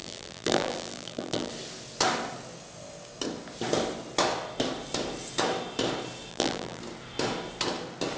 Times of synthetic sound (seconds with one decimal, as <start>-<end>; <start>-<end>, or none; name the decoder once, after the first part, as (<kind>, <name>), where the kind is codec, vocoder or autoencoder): 0.0-1.5 (vocoder, BigVGAN v2); 6.3-6.8